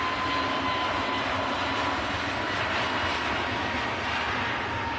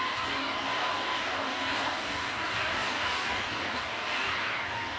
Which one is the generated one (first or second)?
second